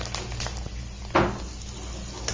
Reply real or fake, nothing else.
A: real